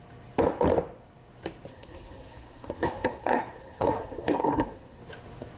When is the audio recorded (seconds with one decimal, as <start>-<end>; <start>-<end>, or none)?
0.0-1.7; 5.0-5.6

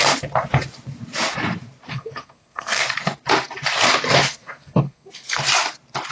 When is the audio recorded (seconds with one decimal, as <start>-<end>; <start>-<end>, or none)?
0.0-1.9; 2.8-4.3; 5.4-6.1

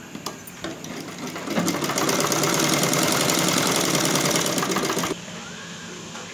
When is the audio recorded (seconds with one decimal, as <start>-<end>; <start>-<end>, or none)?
0.0-6.3

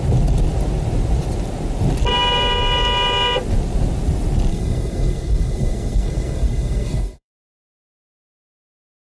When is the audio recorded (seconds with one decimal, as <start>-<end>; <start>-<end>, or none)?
0.0-4.5; 7.7-9.1

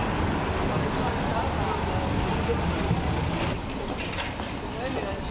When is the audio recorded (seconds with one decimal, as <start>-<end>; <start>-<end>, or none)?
0.0-5.3

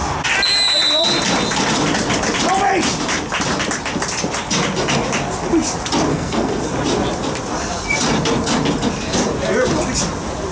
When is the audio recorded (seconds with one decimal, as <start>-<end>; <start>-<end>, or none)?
0.0-6.1; 6.7-10.5

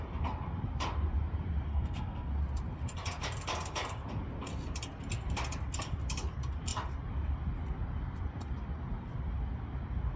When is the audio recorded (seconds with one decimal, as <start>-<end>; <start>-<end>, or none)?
0.0-1.7; 2.3-10.2